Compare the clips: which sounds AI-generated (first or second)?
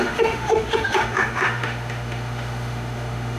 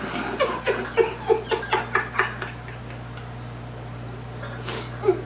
first